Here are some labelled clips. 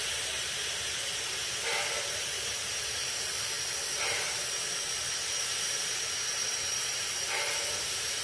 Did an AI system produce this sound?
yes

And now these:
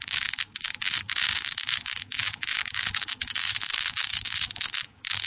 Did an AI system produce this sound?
yes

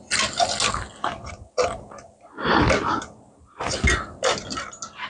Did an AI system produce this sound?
no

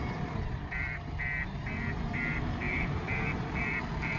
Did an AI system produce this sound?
yes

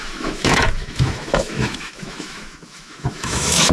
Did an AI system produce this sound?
yes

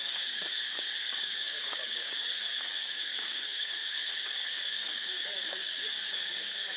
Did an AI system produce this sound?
yes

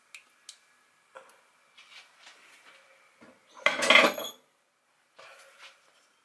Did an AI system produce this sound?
no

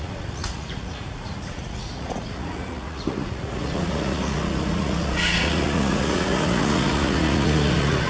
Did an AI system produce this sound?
yes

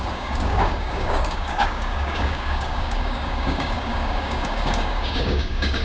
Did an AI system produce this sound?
yes